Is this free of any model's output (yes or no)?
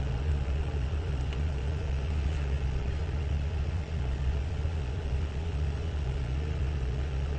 no